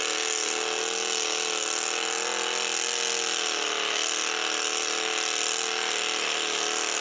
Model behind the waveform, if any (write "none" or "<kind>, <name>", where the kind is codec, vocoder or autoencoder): none